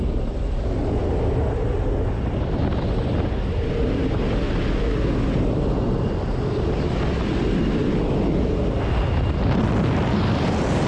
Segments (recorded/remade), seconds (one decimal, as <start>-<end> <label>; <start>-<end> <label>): 0.0-10.9 recorded